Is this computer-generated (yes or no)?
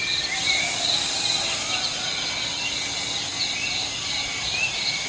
no